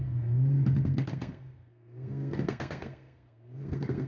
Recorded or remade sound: remade